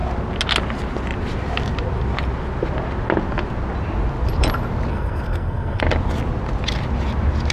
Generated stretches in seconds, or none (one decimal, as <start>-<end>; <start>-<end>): 4.9-5.8